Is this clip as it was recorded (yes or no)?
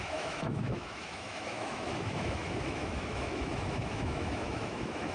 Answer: no